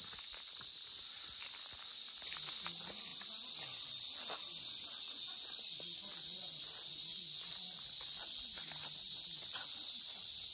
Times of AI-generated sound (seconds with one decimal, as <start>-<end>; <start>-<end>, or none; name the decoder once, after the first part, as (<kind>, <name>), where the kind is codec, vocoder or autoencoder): none